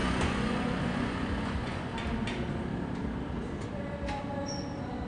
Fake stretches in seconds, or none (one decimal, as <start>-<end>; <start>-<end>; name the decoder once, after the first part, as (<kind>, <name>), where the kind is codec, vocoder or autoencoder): 0.0-1.9 (vocoder, Vocos)